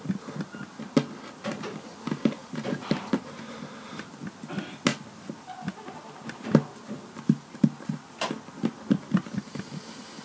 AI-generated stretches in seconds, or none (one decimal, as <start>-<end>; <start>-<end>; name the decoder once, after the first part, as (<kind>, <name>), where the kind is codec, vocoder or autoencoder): 2.4-4.2 (vocoder, BigVGAN v2)